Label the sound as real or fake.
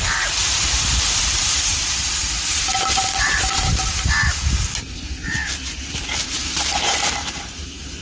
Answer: fake